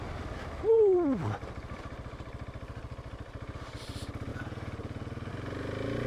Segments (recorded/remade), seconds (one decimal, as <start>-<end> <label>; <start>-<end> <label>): 0.0-4.3 recorded; 4.3-5.3 remade; 5.3-6.1 recorded